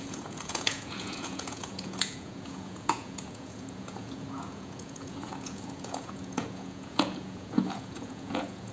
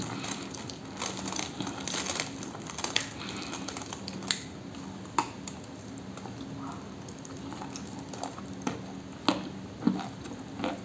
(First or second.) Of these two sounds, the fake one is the first